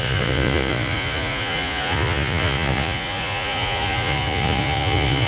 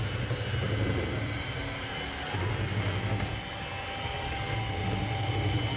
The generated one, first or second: first